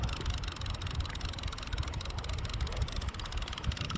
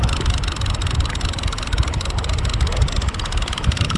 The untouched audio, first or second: second